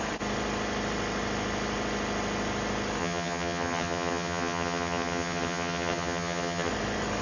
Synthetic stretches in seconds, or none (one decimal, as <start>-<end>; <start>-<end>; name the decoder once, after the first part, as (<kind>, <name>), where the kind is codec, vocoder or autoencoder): 3.0-6.7 (vocoder, HiFi-GAN)